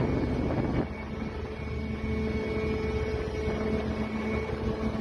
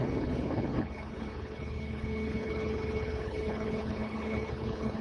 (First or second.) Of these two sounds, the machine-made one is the second